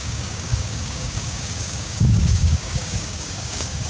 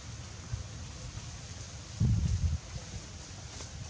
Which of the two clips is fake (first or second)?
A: first